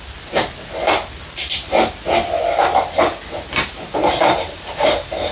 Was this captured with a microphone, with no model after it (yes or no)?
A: yes